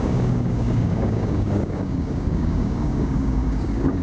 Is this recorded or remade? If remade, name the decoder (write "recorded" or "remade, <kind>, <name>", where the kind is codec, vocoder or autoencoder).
remade, codec, DAC